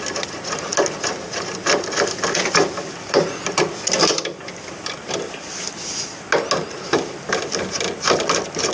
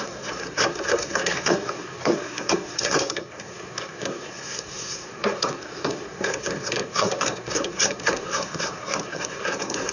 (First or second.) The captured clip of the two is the first